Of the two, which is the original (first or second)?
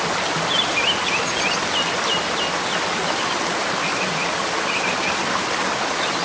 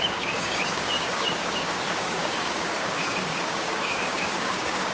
first